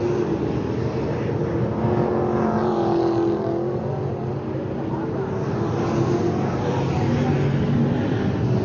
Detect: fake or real real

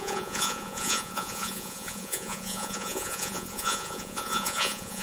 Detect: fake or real fake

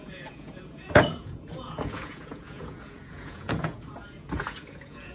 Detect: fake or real fake